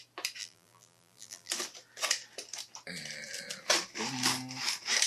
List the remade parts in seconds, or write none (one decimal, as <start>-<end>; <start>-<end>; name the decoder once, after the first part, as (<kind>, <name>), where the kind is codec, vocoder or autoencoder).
0.4-1.5 (vocoder, BigVGAN v2)